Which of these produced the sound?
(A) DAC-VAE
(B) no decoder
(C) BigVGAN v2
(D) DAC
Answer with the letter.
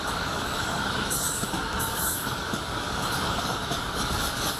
D